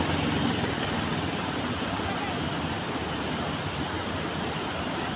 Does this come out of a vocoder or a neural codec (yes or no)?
no